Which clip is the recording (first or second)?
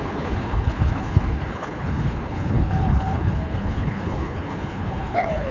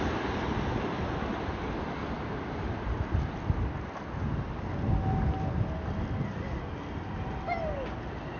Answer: second